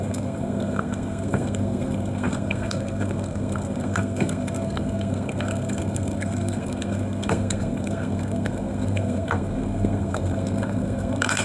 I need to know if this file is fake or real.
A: fake